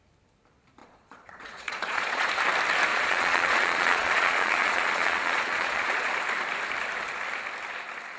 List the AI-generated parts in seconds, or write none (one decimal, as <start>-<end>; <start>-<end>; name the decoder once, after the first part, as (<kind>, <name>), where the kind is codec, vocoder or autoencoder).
0.8-2.3 (vocoder, Vocos); 2.9-6.2